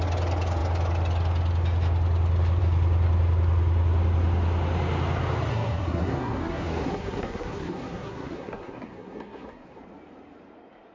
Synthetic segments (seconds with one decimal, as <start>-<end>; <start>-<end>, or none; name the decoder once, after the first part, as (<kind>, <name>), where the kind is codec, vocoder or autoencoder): 5.5-9.8 (codec, SNAC)

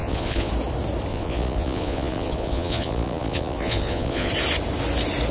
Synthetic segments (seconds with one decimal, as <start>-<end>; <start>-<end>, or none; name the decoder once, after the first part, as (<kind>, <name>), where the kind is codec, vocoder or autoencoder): 0.0-0.5 (vocoder, Vocos); 1.1-4.3

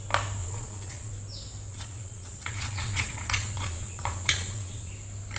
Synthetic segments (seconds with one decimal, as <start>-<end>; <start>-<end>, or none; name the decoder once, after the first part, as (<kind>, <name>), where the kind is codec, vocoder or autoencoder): 0.4-1.1 (vocoder, Vocos); 1.7-4.9

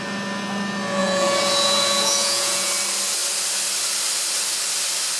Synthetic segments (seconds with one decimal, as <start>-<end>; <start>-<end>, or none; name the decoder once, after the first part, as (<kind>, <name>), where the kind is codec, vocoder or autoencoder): 1.0-2.7 (vocoder, Vocos)

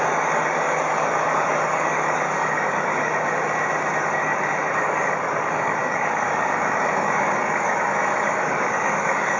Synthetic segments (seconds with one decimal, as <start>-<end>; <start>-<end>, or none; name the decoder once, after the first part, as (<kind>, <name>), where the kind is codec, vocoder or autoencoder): 0.0-3.1 (codec, DAC); 4.0-9.4

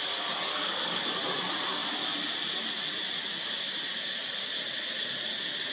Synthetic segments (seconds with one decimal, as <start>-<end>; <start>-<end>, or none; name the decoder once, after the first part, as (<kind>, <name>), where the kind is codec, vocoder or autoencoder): 0.5-1.0 (codec, DAC)